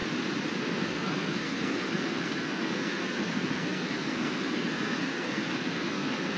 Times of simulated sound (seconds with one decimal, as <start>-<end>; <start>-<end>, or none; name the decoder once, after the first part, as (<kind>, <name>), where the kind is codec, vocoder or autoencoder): 0.6-6.4 (codec, SNAC)